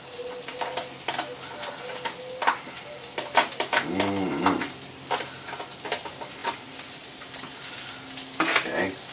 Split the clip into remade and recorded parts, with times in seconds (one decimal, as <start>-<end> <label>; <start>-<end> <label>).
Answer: 0.0-9.1 recorded